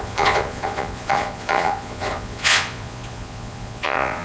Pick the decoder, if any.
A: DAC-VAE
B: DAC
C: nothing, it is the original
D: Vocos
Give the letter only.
D